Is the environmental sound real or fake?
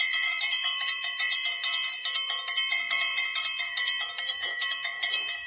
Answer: fake